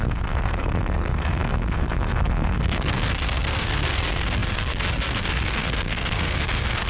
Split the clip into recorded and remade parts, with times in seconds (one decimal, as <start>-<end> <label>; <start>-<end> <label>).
0.0-6.9 remade